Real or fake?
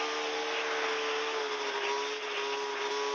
real